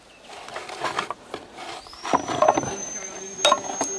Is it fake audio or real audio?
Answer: real